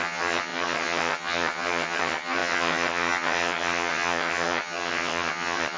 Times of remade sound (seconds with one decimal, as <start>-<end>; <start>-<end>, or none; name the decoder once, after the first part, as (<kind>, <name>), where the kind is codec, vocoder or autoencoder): 0.0-5.8 (vocoder, HiFi-GAN)

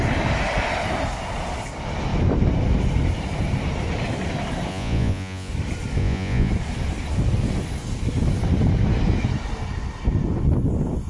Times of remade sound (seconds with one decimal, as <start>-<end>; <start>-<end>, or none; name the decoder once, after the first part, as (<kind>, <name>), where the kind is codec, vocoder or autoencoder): 4.7-5.5 (vocoder, Vocos); 6.0-6.5

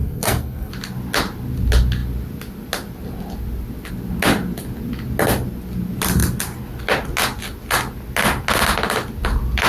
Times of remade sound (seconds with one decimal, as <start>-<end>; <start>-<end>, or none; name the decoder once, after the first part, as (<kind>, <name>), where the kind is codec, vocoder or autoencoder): 0.0-0.7 (codec, SNAC)